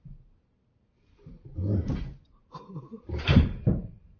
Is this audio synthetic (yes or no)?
yes